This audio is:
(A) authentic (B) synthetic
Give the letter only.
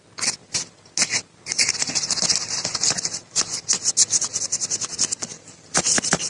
A